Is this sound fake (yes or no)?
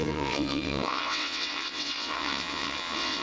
yes